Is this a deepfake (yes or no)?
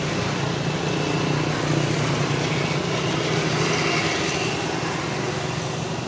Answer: no